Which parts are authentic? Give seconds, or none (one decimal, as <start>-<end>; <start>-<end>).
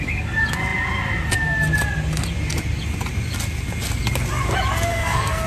0.0-4.9